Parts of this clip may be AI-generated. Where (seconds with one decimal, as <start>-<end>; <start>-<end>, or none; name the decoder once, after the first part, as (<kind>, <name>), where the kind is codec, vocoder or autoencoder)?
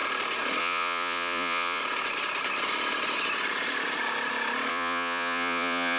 0.6-1.8 (vocoder, Vocos); 4.7-6.0